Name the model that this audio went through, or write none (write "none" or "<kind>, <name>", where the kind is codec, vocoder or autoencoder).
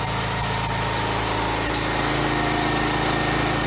none